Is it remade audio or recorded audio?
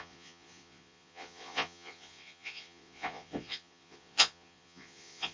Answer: remade